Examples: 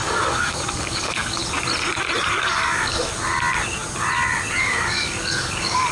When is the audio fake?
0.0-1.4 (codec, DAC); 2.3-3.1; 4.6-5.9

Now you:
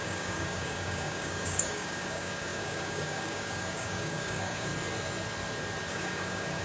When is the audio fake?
0.0-4.7 (codec, DAC); 5.9-6.6

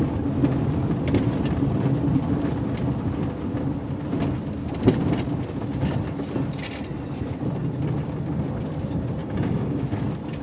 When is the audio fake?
9.2-10.0 (codec, DAC)

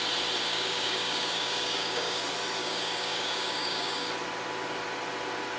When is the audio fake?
0.4-2.2 (codec, DAC); 2.6-4.1

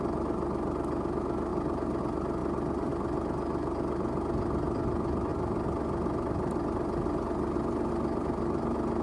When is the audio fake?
none

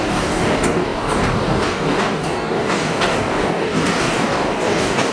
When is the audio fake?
0.0-5.1 (codec, DAC)

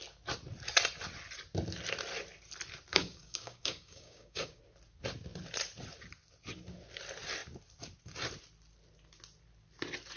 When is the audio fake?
2.9-4.6 (codec, DAC)

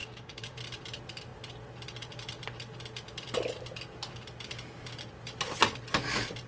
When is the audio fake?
0.0-0.6 (codec, DAC)